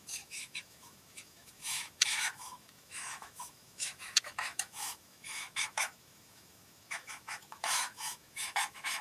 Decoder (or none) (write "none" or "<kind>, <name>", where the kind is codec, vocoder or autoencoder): autoencoder, DAC-VAE